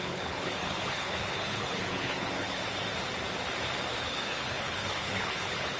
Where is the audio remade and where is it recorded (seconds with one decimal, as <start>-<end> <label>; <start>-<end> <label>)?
0.0-2.6 remade; 2.6-4.0 recorded; 4.0-5.8 remade